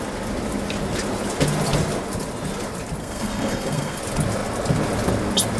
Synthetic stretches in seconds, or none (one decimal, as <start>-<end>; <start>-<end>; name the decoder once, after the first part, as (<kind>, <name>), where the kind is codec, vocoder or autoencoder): 3.0-4.0 (codec, SNAC)